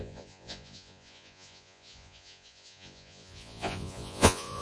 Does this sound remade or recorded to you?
remade